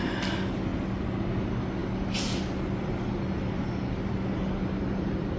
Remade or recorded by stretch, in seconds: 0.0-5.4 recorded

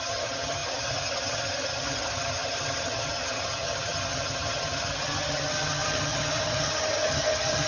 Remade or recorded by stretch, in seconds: 0.0-7.7 remade

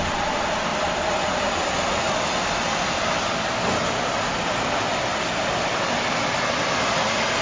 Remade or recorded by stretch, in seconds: 0.0-0.7 remade; 0.7-3.0 recorded; 3.0-7.4 remade